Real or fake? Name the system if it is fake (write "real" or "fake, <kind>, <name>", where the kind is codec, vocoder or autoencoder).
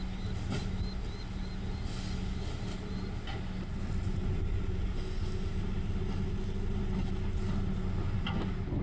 real